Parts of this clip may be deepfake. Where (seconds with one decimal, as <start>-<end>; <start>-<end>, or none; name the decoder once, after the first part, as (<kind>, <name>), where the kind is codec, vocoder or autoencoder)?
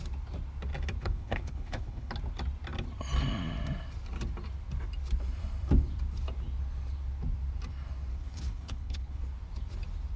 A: 1.0-2.1 (codec, HILCodec); 8.1-9.2